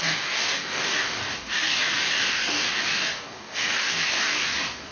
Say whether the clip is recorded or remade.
remade